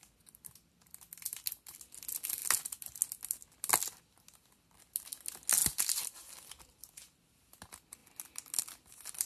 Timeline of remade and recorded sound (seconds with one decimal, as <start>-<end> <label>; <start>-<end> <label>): 0.0-9.3 recorded